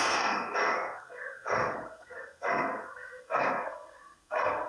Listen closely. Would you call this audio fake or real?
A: fake